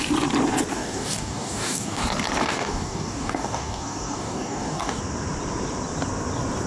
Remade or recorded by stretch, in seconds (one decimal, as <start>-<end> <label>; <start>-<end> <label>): 0.0-0.7 recorded; 0.7-2.0 remade; 2.0-2.4 recorded; 2.4-5.0 remade; 5.0-6.7 recorded